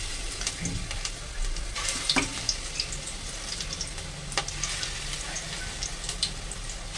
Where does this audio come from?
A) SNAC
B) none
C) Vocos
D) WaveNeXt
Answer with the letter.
B